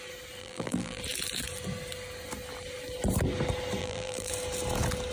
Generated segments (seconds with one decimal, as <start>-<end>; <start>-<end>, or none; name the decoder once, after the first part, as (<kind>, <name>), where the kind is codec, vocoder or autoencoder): 0.4-1.0 (vocoder, BigVGAN v2); 3.8-4.3